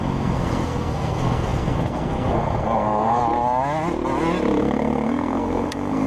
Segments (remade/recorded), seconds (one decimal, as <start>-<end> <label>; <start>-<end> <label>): 0.0-3.2 remade; 3.2-4.6 recorded; 4.6-6.1 remade

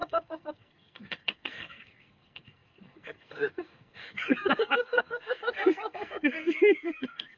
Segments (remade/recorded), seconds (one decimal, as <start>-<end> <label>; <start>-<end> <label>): 0.0-7.4 remade

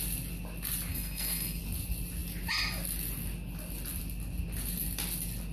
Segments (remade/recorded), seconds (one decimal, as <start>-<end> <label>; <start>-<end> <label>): 0.0-0.9 recorded; 0.9-1.6 remade; 1.6-5.5 recorded

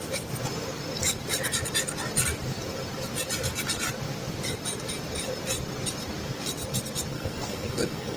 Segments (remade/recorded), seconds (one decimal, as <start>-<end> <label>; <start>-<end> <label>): 0.0-7.1 recorded; 7.1-8.2 remade

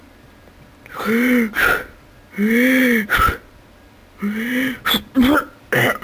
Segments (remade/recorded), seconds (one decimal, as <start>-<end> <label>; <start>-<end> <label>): 0.0-6.0 recorded

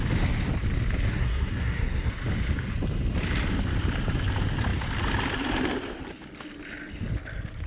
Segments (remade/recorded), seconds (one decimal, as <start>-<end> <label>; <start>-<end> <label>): 0.0-1.1 recorded; 1.1-2.1 remade; 2.1-7.7 recorded

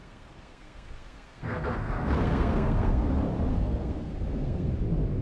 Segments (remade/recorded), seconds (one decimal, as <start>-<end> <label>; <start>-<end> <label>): 0.0-3.1 remade; 3.1-3.5 recorded; 3.5-4.7 remade; 4.7-5.2 recorded